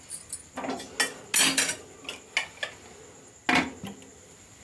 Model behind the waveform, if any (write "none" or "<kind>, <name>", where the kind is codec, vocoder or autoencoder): none